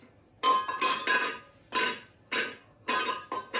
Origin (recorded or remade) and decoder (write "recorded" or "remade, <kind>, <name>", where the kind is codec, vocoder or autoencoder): recorded